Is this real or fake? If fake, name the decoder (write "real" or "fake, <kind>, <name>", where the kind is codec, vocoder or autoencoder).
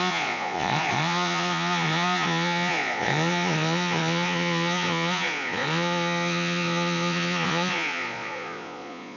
fake, vocoder, Vocos